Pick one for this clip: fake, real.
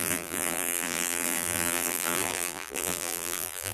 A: fake